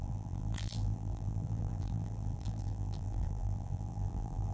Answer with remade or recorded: remade